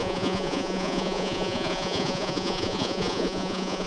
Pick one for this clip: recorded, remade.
remade